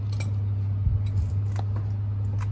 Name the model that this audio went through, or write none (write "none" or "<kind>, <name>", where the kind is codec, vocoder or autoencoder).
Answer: none